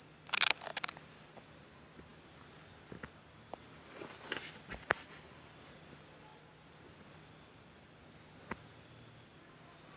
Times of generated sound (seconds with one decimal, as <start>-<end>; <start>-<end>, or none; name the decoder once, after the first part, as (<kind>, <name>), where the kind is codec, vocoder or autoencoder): none